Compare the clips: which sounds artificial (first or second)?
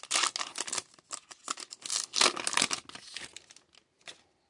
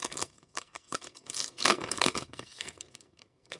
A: second